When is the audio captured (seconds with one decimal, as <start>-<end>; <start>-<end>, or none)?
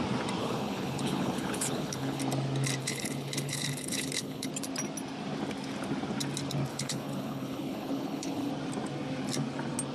0.0-0.4; 2.2-2.8; 4.5-6.7; 8.5-9.9